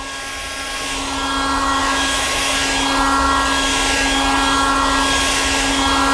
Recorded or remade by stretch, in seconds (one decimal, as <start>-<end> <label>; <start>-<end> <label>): 0.0-1.8 recorded; 1.8-2.4 remade; 2.4-6.1 recorded